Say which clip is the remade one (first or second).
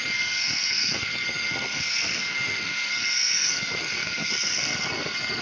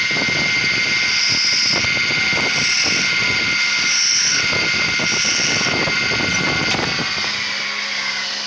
first